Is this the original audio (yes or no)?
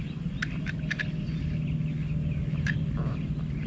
yes